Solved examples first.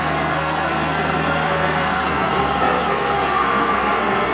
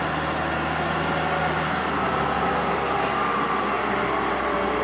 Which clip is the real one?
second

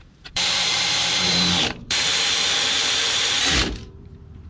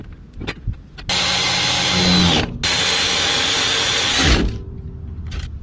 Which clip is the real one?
second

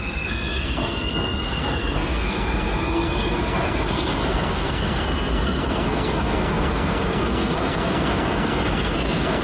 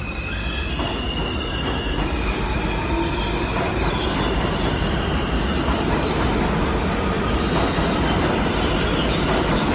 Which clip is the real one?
second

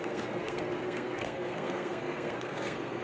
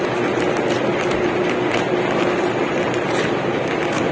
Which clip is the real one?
second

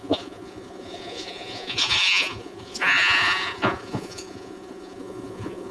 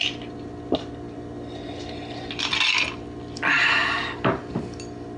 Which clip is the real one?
second